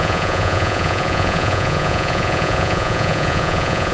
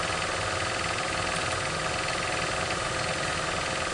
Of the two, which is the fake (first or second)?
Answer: first